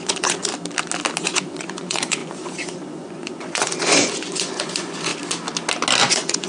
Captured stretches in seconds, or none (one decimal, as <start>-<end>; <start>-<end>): 0.5-1.2; 5.1-6.1